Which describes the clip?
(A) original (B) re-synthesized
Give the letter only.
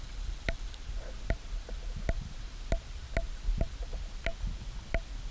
A